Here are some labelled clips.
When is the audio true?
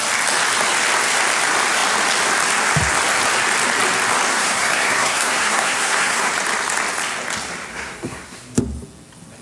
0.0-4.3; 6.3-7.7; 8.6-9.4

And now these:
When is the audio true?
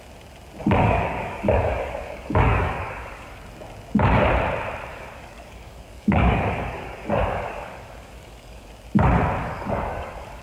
0.0-0.6; 3.4-4.9; 8.7-9.4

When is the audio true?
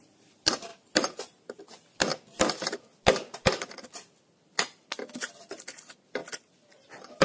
0.0-7.2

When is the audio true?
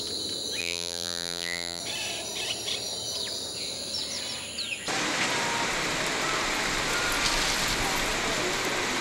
0.0-0.6; 1.8-9.0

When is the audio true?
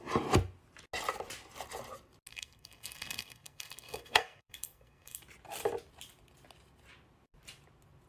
0.0-2.3; 5.2-8.1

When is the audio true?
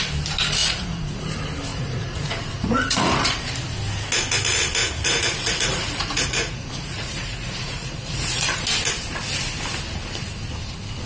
0.0-0.6; 1.2-1.7; 3.4-4.8; 8.6-11.1